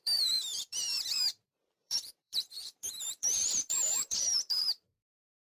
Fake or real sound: fake